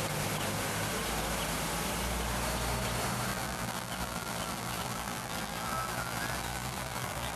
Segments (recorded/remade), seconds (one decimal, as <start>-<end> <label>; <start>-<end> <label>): 0.0-3.3 recorded; 3.3-7.4 remade